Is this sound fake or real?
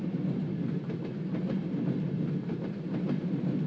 real